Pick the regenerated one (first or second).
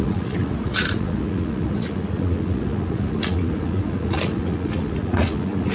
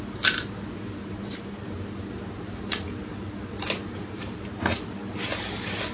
first